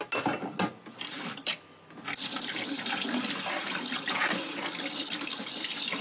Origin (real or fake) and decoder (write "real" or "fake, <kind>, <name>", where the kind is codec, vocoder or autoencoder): real